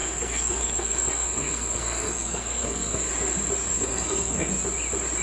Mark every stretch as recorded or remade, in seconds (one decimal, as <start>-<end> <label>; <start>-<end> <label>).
0.0-3.1 remade; 3.1-3.7 recorded; 3.7-4.5 remade; 4.5-5.2 recorded